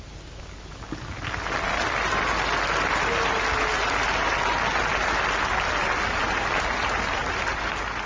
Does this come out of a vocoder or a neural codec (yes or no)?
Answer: no